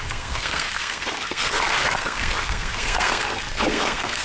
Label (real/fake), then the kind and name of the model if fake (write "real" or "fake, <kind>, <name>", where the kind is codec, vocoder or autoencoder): fake, codec, SNAC